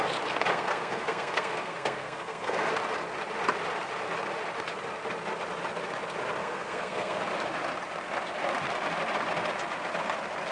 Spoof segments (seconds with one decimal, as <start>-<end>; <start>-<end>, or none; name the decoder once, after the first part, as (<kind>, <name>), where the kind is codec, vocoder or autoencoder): 0.5-2.7 (codec, SNAC); 6.4-7.2